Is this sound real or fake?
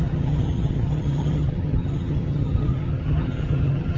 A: fake